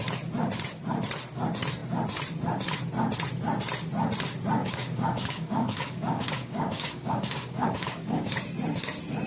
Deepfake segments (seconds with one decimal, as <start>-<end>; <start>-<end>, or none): 4.6-8.3

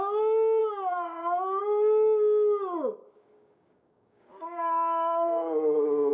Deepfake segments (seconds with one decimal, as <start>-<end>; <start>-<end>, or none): 0.6-1.6; 3.0-6.1

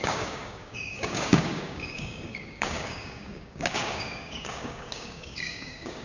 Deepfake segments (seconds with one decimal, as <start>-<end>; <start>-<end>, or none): 0.0-6.0